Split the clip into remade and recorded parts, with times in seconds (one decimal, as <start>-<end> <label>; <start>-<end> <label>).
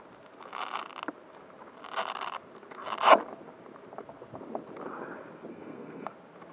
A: 0.0-5.5 recorded; 5.5-6.1 remade; 6.1-6.5 recorded